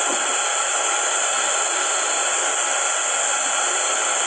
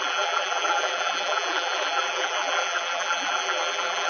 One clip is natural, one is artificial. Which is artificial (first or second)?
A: second